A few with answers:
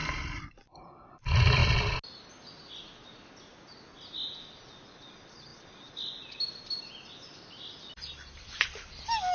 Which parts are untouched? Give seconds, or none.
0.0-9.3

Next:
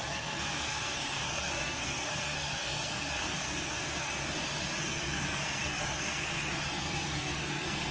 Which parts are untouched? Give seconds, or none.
4.2-4.8

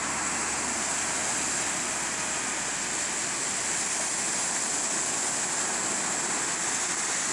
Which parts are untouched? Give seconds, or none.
0.0-7.3

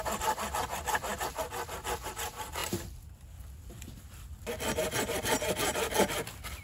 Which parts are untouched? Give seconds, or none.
0.0-6.6

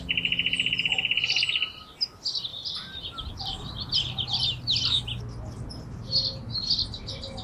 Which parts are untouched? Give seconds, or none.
0.0-2.5; 4.5-7.4

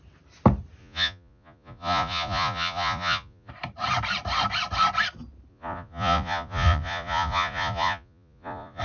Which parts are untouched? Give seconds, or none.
0.0-0.8; 3.5-5.5

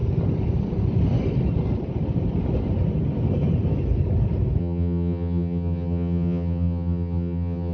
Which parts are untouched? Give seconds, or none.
0.0-4.6